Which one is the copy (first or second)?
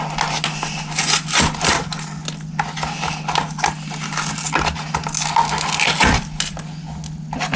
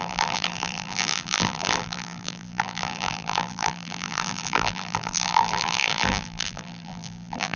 second